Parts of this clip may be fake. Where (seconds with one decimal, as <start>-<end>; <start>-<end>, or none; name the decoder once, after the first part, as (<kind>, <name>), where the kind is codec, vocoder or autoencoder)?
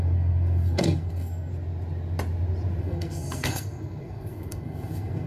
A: 0.0-1.5 (codec, SNAC); 2.8-5.3